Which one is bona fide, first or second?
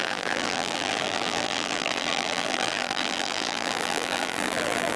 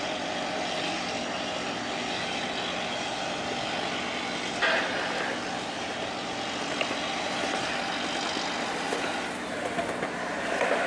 second